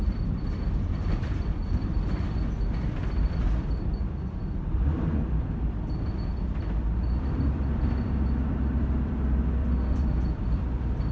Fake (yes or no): yes